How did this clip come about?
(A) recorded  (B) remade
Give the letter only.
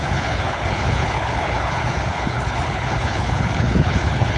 B